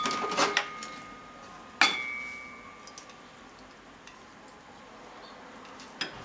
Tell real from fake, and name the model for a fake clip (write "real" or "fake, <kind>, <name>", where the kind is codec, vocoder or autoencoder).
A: real